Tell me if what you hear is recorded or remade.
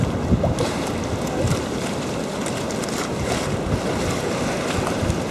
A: recorded